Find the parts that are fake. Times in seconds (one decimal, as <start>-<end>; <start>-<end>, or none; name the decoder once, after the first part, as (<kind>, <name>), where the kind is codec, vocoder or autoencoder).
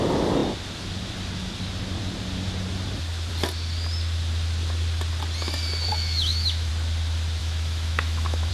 5.9-6.7 (autoencoder, DAC-VAE); 7.4-8.5